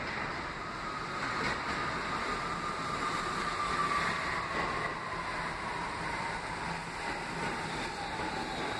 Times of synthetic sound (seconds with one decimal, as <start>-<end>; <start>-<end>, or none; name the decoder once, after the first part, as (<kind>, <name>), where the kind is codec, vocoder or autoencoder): none